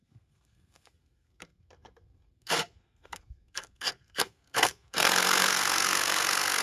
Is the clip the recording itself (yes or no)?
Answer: no